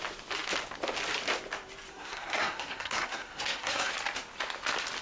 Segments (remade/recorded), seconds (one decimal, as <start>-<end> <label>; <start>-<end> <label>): 0.0-1.9 recorded; 1.9-3.9 remade; 3.9-5.0 recorded